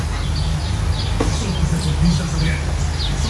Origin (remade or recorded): recorded